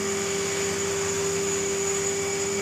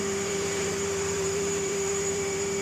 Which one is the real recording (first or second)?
first